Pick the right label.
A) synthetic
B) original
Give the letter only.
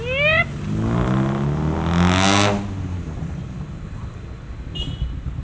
B